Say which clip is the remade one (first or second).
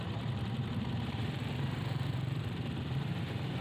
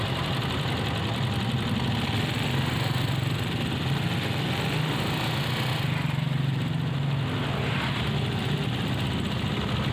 first